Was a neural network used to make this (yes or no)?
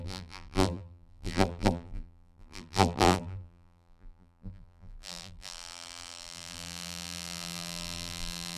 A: yes